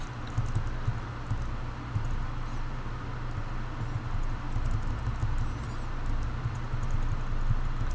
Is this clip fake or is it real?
real